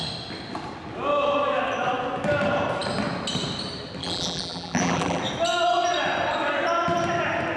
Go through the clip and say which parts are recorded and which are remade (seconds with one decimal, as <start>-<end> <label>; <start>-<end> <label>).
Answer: 0.0-4.0 recorded; 4.0-5.2 remade; 5.2-7.6 recorded